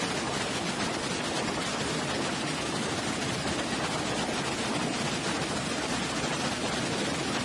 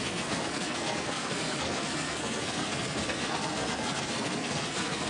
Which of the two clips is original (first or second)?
first